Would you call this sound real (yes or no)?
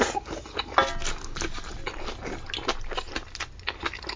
yes